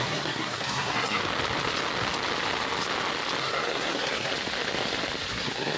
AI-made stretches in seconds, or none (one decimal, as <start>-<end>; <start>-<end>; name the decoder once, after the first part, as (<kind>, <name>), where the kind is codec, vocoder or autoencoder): 0.0-1.2 (codec, SNAC); 3.4-4.3; 5.3-5.8

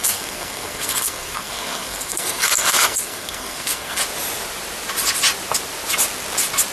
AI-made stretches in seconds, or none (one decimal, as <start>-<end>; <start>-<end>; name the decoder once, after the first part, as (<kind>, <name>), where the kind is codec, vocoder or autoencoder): 0.0-4.0 (codec, SNAC)

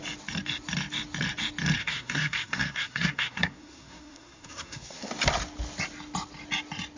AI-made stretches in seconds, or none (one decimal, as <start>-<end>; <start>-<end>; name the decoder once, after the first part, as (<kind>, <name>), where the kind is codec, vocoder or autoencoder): 1.8-5.1 (codec, SNAC)

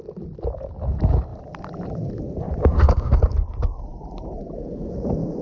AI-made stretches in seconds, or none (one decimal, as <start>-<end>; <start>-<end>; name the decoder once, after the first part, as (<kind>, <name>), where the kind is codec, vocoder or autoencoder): 2.6-3.2 (codec, SNAC)

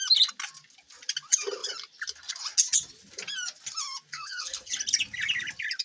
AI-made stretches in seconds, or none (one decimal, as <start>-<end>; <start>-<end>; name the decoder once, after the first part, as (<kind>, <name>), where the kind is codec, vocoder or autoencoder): 4.1-4.7 (codec, SNAC)

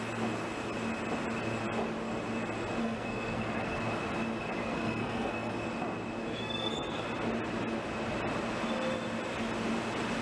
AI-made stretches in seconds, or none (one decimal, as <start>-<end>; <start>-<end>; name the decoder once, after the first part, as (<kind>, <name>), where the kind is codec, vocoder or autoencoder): 2.8-3.8 (codec, SNAC); 4.6-5.5; 6.3-7.0